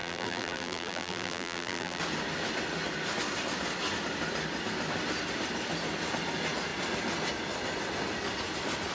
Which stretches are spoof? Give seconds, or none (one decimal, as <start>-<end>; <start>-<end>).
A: 0.0-2.0